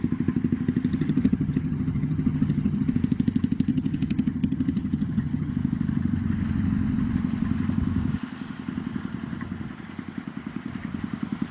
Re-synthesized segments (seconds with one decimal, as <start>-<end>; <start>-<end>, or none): 0.9-2.9; 3.7-5.5